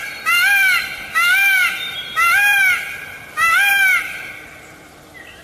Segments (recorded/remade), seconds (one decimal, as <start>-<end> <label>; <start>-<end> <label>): 0.0-5.4 remade